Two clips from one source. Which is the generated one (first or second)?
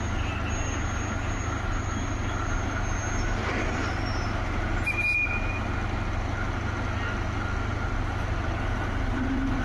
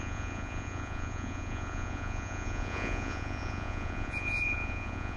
second